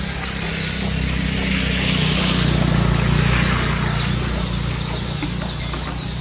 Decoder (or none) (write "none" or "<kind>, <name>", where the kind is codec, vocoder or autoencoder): none